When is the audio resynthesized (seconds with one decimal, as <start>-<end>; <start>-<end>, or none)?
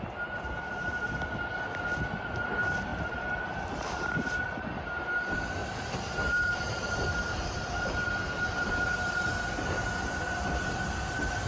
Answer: 2.9-4.6; 5.6-8.1